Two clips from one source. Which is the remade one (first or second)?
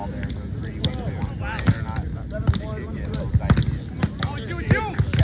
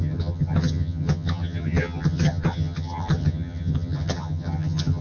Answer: second